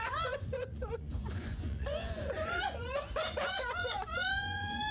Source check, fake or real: fake